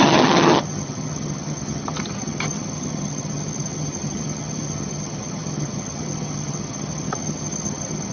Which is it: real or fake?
fake